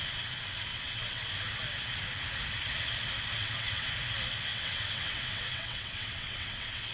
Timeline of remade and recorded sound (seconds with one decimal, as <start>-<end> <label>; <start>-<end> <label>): 0.0-0.7 recorded; 0.7-1.2 remade; 1.2-3.4 recorded; 3.4-3.9 remade; 3.9-4.5 recorded; 4.5-6.9 remade